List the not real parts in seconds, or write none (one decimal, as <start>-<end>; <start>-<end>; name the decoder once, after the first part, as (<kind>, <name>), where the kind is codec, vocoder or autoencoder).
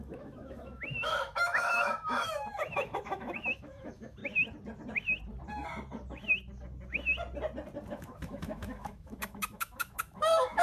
0.0-4.2 (autoencoder, DAC-VAE); 7.9-10.6